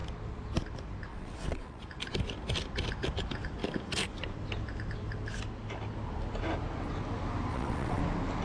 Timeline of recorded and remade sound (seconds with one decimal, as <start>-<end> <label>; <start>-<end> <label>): 0.0-1.1 recorded; 1.1-1.8 remade; 1.8-7.5 recorded; 7.5-8.0 remade; 8.0-8.4 recorded